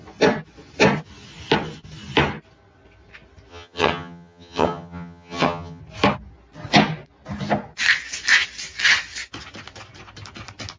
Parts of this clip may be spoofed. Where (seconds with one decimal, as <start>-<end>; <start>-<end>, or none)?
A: 3.5-5.8